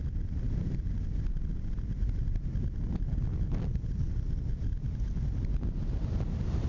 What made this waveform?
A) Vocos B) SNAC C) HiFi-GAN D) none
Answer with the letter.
D